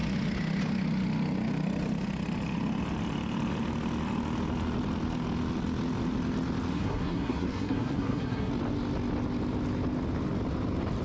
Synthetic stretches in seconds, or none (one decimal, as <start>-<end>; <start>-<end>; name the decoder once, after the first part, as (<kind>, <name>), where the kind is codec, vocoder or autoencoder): 6.7-8.5 (codec, SNAC)